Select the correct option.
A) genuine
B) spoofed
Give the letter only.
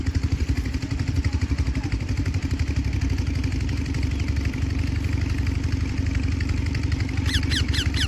B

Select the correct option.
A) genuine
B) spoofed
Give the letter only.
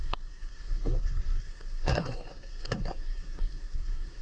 B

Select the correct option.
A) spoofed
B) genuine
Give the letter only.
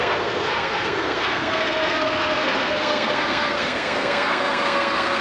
A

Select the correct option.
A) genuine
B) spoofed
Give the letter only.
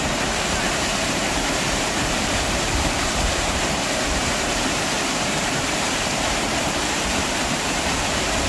B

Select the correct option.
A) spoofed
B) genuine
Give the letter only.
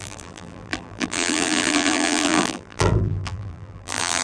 A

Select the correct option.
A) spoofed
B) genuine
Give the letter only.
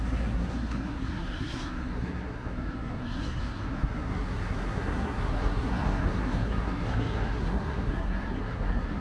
A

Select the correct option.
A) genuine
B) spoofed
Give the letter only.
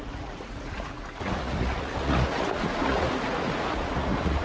B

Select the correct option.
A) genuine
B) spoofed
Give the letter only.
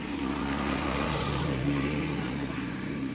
B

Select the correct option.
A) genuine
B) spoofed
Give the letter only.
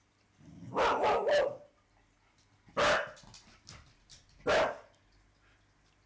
A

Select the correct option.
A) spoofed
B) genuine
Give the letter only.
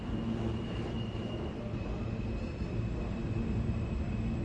B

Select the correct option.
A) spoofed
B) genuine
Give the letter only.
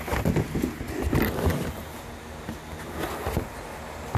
B